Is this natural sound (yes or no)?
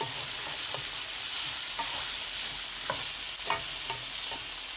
yes